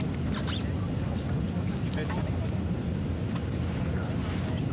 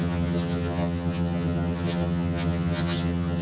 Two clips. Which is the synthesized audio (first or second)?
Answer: second